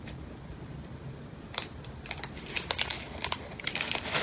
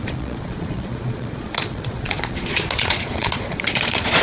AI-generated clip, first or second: second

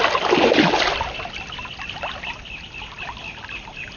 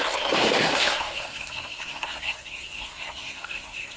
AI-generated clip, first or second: second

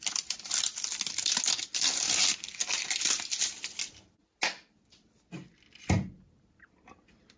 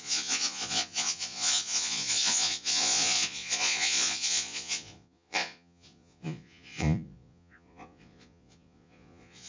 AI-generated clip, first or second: second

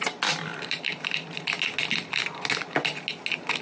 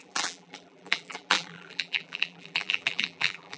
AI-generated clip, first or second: second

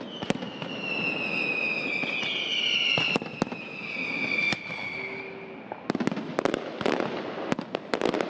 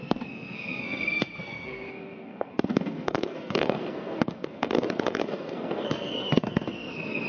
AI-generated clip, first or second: second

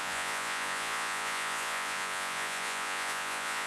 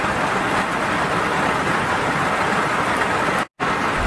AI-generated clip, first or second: first